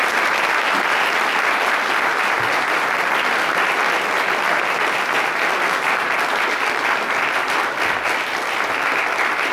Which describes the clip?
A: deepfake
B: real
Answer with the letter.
B